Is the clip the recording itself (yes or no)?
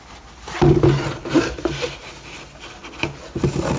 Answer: yes